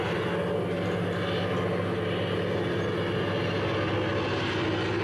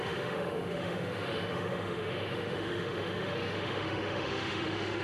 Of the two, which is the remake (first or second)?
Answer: second